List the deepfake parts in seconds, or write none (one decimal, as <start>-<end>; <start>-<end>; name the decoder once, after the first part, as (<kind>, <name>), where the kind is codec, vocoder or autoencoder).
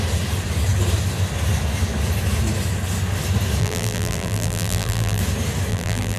3.6-5.2 (vocoder, BigVGAN v2); 5.7-6.2